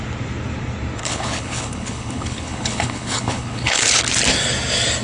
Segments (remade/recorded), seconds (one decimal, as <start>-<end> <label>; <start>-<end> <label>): 0.0-1.0 recorded; 1.0-4.0 remade; 4.0-5.0 recorded